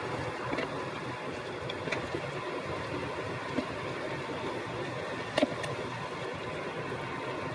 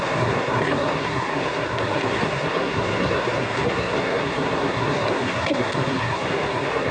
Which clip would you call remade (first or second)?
second